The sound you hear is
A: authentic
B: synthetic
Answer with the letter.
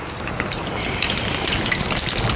A